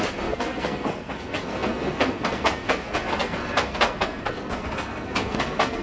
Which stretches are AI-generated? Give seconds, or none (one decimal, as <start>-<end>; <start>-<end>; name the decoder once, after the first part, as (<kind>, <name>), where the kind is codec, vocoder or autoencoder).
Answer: 0.0-5.8 (codec, SNAC)